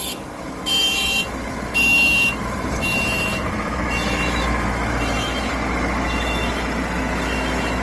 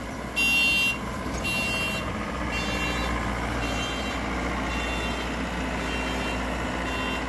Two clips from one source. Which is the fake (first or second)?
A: first